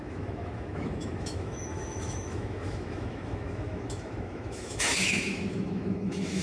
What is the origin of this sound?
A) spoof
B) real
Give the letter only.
A